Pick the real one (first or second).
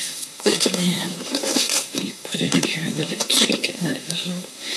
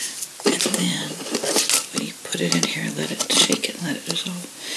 second